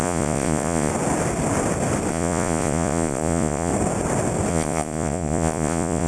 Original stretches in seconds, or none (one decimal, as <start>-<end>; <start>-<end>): 0.9-2.1; 3.7-4.5